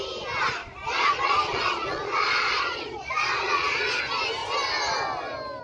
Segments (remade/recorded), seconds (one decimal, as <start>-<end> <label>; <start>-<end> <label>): 0.0-0.6 recorded; 0.6-4.0 remade; 4.0-5.6 recorded